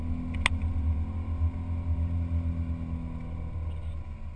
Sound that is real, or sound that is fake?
real